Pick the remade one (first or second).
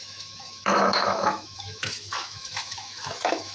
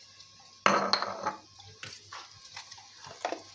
first